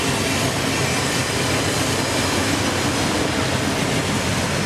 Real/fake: real